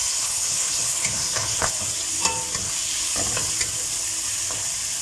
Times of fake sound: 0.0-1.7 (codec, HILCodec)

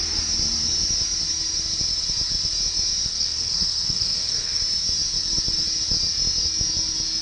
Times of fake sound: 3.1-4.6 (codec, SNAC)

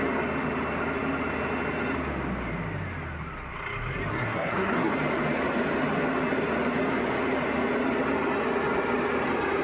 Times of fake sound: 4.1-4.9 (codec, SNAC)

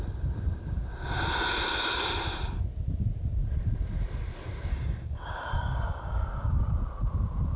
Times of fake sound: 4.7-6.6 (codec, DAC)